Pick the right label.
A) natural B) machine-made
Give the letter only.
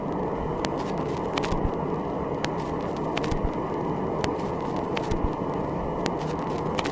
A